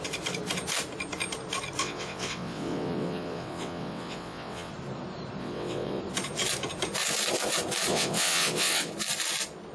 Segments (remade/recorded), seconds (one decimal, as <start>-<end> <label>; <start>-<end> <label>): 0.0-1.8 recorded; 1.8-4.7 remade; 4.7-5.4 recorded; 5.4-6.0 remade; 6.0-7.9 recorded; 7.9-8.9 remade; 8.9-9.7 recorded